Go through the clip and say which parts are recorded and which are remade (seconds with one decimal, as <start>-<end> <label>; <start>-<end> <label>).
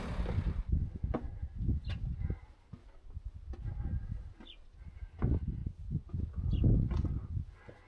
0.0-7.9 recorded